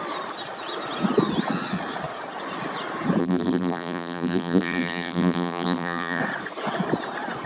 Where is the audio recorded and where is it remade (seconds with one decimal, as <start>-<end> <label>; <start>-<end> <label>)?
0.0-3.2 recorded; 3.2-6.2 remade; 6.2-7.5 recorded